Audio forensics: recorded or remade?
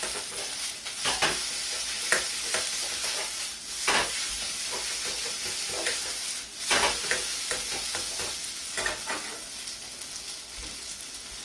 recorded